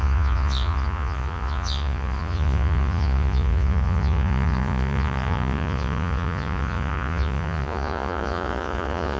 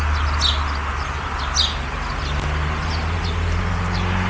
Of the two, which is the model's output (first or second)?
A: first